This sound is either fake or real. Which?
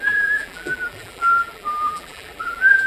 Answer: fake